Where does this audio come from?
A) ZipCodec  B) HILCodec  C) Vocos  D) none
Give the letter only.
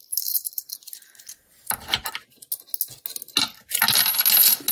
D